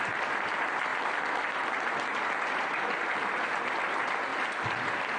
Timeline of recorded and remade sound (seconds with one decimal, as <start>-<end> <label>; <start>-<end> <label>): 0.0-5.2 recorded